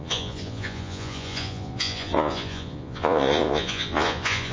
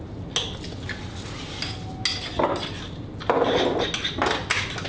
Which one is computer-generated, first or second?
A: first